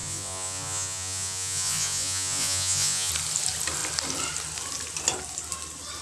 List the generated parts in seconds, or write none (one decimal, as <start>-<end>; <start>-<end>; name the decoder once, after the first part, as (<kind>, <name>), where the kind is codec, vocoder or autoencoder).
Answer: 0.0-3.1 (vocoder, Vocos)